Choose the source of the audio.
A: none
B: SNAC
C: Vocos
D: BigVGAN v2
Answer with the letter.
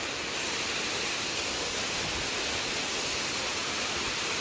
A